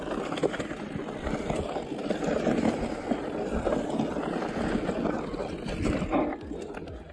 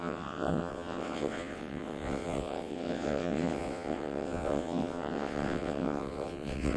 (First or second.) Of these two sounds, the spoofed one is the second